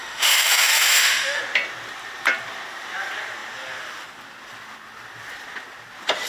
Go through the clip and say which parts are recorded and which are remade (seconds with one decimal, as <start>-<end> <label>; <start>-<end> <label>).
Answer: 0.0-1.4 remade; 1.4-6.3 recorded